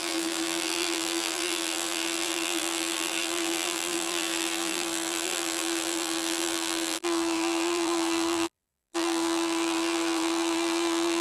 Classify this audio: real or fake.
fake